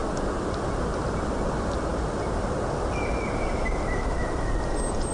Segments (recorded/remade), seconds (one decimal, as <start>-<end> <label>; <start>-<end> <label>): 0.0-0.5 remade; 0.5-0.9 recorded; 0.9-1.5 remade; 1.5-5.1 recorded